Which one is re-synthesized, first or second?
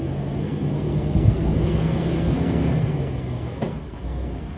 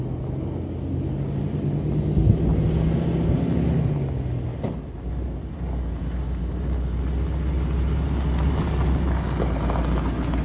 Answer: first